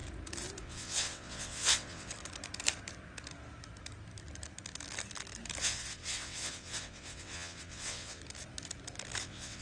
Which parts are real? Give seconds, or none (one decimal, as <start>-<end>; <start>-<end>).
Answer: 0.0-0.6; 2.1-5.6; 8.2-9.2